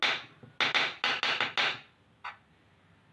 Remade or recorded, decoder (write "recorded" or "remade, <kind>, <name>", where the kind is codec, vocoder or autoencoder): recorded